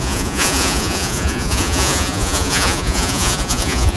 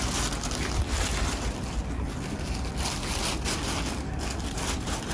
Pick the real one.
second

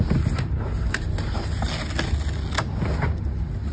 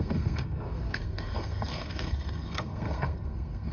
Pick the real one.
first